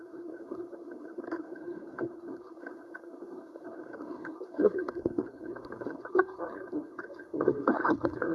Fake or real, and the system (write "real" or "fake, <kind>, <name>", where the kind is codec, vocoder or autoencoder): fake, codec, SNAC